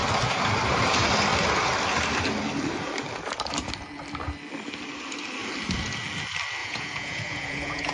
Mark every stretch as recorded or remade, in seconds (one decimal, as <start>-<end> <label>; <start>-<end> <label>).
0.0-6.6 recorded; 6.6-7.9 remade